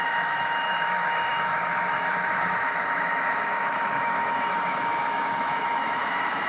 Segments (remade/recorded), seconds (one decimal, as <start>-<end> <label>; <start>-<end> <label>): 0.0-6.5 remade